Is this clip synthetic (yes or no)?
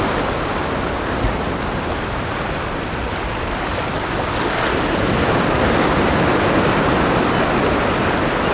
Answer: no